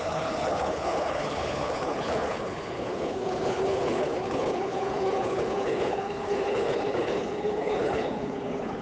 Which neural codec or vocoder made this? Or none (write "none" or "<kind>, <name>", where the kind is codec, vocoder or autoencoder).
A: codec, HILCodec